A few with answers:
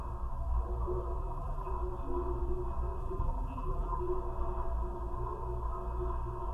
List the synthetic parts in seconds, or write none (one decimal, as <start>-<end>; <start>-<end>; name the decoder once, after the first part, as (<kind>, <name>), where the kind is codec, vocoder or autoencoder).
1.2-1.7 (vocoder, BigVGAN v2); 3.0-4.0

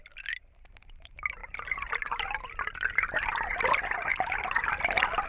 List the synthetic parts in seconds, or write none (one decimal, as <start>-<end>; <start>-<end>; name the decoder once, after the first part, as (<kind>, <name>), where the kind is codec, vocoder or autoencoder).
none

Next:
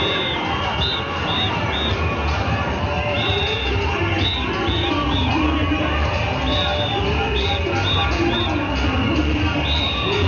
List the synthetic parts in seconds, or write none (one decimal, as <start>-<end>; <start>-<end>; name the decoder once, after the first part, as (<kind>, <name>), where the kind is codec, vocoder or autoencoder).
none

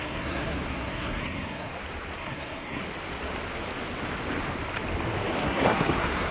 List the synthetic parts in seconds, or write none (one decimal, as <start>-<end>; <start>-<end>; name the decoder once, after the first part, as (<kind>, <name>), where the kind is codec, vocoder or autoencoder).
0.0-1.7 (codec, SNAC); 2.2-2.8; 5.4-6.3